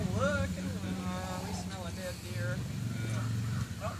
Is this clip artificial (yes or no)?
no